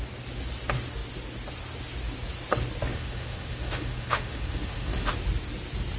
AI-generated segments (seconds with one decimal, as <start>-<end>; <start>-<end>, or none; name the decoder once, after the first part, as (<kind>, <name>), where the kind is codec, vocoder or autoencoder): 2.9-5.1 (autoencoder, DAC-VAE)